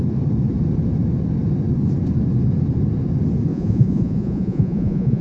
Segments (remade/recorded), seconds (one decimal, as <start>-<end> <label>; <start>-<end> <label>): 0.0-3.5 recorded; 3.5-5.2 remade

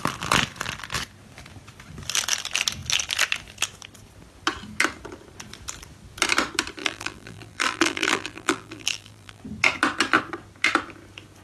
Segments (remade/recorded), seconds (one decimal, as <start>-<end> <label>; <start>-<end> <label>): 0.0-6.8 recorded; 6.8-9.4 remade; 9.4-11.4 recorded

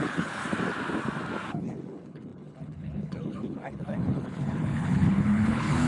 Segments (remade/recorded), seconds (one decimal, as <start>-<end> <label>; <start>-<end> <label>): 0.0-0.4 remade; 0.4-1.5 recorded; 1.5-5.9 remade

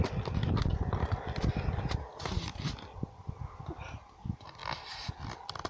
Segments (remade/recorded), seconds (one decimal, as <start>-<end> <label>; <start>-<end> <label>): 0.0-5.7 recorded

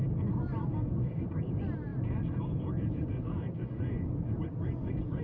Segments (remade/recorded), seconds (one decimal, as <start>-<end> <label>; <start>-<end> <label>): 0.0-1.9 recorded; 1.9-3.2 remade; 3.2-5.2 recorded

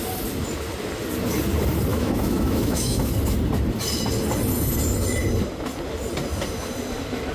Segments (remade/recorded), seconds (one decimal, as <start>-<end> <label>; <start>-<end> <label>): 0.0-1.9 recorded; 1.9-3.1 remade; 3.1-7.3 recorded

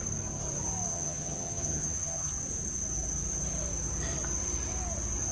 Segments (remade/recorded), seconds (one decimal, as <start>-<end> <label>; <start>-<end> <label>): 0.0-0.9 recorded; 0.9-2.3 remade; 2.3-5.3 recorded